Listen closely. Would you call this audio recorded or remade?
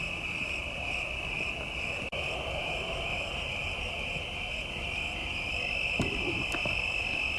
recorded